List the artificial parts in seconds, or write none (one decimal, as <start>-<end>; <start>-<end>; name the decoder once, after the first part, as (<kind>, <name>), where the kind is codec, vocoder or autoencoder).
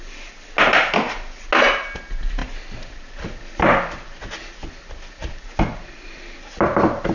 none